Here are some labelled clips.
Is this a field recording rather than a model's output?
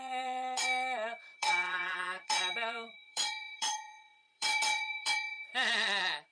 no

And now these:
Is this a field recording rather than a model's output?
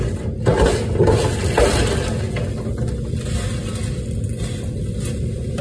yes